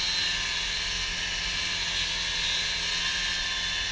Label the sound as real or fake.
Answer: real